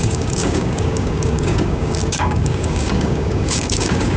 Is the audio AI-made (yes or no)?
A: yes